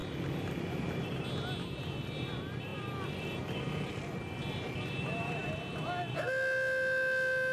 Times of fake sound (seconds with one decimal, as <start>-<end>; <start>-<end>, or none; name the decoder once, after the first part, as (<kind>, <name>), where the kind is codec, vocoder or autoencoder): none